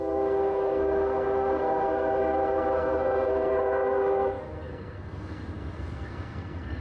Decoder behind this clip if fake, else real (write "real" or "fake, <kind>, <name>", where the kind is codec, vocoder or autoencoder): fake, codec, SNAC